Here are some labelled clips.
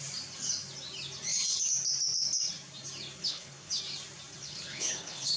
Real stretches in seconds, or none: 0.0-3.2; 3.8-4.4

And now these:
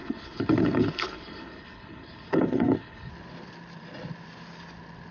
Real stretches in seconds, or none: 3.1-5.1

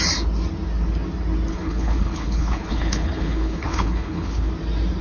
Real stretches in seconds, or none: 0.0-1.5; 4.5-5.0

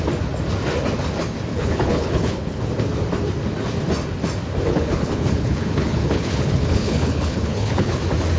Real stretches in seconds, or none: 0.0-1.5; 2.6-4.7; 8.0-8.4